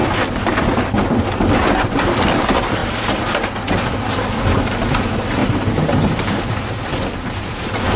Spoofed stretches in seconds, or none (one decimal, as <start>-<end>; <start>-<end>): 0.0-2.8; 3.7-5.4; 6.5-8.0